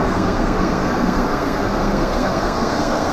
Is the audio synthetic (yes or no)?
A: yes